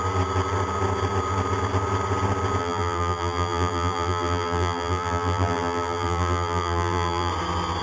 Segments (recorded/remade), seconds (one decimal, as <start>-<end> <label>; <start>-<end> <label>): 0.0-2.6 recorded; 2.6-7.3 remade; 7.3-7.8 recorded